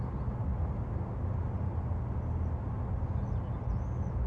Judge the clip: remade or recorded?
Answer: recorded